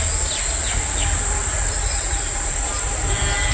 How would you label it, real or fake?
real